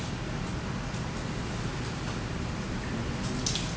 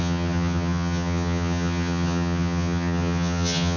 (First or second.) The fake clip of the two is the second